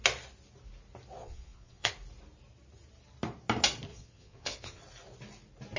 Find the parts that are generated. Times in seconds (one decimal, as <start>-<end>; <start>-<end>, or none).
1.2-1.9; 3.9-4.8